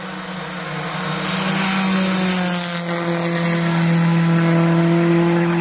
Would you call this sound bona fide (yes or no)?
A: yes